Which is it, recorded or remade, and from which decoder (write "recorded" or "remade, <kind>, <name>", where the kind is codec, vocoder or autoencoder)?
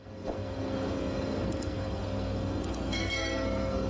remade, codec, SNAC